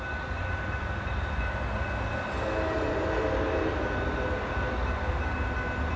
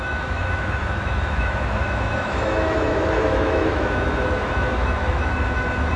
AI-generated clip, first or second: second